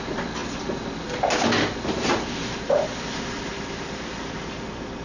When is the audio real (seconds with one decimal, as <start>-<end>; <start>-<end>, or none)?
0.0-5.0